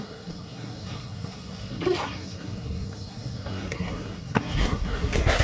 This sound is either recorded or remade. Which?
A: remade